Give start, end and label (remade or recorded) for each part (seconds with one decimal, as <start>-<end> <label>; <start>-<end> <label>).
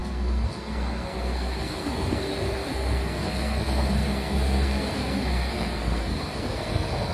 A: 0.0-7.1 remade